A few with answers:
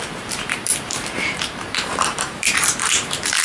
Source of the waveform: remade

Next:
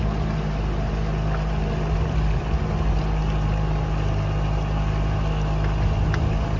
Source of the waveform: recorded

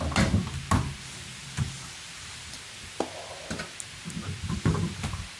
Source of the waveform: recorded